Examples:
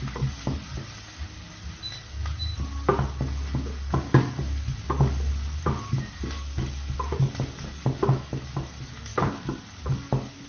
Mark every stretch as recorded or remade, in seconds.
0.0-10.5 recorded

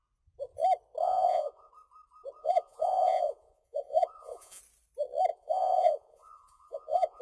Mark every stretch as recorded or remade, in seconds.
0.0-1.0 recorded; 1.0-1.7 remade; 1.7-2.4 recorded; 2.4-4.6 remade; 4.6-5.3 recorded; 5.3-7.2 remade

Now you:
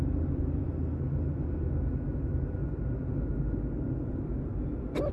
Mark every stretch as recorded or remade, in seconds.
0.0-4.5 recorded; 4.5-5.1 remade

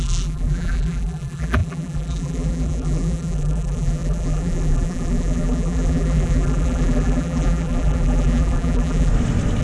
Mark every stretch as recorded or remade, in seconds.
0.0-9.1 remade; 9.1-9.6 recorded